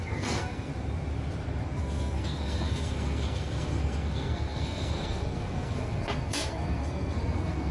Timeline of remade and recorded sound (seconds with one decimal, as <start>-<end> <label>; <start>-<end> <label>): 0.0-0.7 remade; 0.7-1.8 recorded; 1.8-7.7 remade